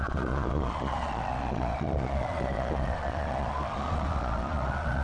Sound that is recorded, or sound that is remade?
remade